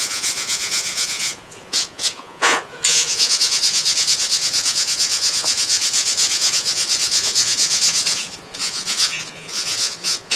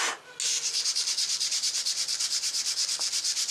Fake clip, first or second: first